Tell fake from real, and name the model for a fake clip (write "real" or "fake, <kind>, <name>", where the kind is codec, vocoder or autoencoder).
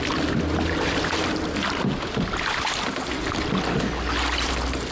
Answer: real